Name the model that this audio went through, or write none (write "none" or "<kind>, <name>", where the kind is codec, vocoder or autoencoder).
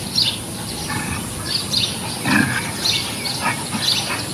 none